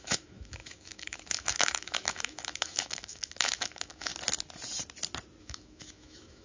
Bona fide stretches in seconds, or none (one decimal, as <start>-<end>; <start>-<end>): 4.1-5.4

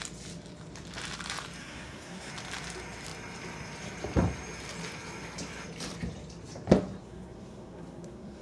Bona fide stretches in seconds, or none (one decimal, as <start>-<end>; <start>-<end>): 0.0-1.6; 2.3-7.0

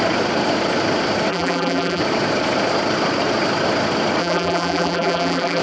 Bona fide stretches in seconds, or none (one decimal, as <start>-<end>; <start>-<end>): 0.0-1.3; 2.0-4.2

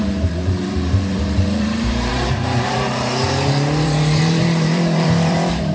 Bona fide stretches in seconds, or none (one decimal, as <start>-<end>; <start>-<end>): none

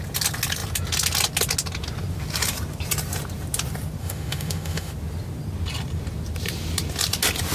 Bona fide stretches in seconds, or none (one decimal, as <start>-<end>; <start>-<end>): 0.0-4.0; 4.9-7.5